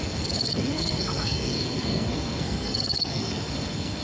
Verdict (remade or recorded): remade